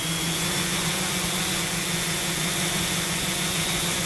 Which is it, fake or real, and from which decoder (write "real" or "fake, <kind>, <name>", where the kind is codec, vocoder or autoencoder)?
fake, vocoder, Vocos